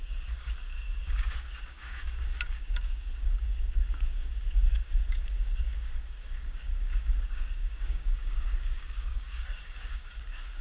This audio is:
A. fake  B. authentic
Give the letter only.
A